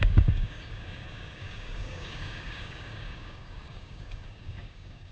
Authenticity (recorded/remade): remade